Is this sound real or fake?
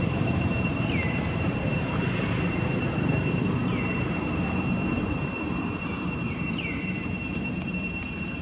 fake